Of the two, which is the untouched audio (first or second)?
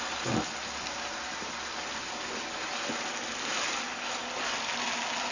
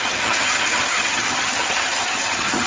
first